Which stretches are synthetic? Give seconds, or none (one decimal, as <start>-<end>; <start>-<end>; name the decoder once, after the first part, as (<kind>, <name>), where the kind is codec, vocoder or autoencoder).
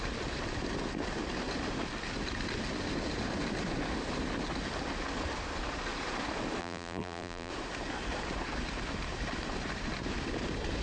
6.6-7.5 (vocoder, BigVGAN v2)